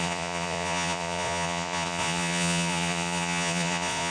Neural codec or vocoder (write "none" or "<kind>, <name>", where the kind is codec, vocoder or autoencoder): vocoder, Vocos